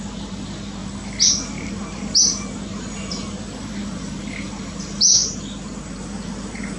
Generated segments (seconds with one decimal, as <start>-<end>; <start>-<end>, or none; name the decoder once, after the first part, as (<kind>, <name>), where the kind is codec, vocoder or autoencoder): none